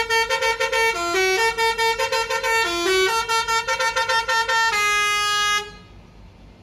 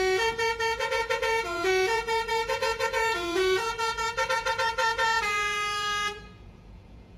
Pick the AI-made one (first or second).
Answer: second